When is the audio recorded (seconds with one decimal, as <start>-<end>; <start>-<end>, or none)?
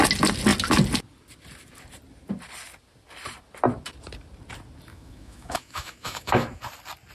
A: 0.0-4.9; 6.6-7.1